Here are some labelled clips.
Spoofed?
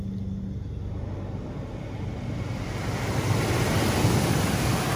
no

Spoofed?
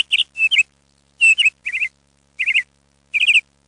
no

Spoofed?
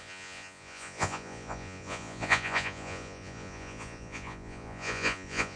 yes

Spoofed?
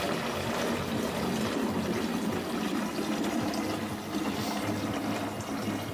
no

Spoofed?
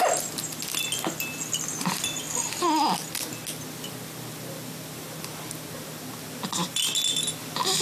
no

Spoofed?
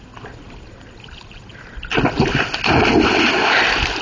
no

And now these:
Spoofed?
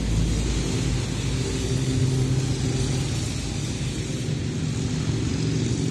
no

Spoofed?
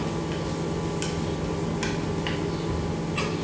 no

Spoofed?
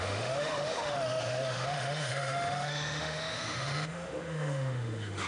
yes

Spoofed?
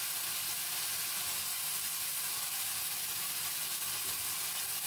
no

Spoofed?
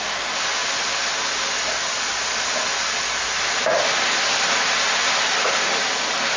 no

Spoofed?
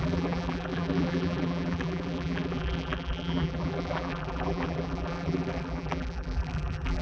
yes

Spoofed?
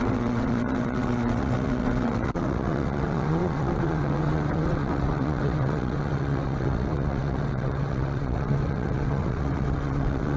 yes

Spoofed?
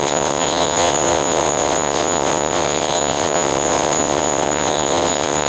yes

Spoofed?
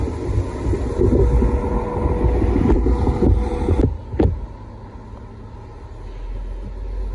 no